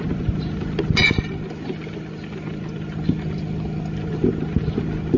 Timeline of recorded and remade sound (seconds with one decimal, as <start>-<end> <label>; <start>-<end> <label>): 0.0-5.2 recorded